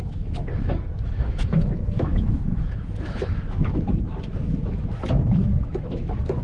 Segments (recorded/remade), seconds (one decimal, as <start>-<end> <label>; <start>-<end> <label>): 0.0-6.4 remade